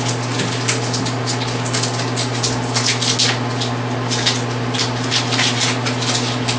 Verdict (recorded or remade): recorded